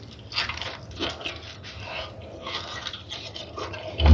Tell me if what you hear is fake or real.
real